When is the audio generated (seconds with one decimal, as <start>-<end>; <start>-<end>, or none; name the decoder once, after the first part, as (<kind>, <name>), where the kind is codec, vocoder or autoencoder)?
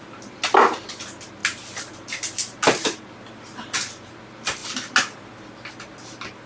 none